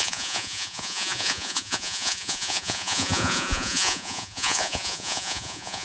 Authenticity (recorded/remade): remade